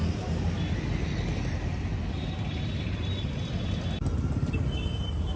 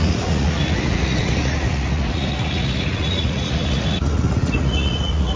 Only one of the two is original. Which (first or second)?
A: first